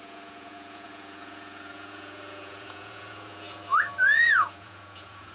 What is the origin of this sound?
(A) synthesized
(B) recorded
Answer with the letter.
A